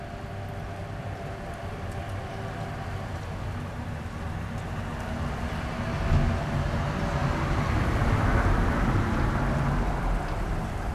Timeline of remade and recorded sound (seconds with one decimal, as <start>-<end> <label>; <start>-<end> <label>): 0.0-0.8 recorded; 0.8-2.2 remade; 2.2-10.9 recorded